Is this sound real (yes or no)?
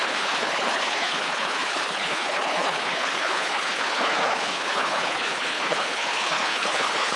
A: no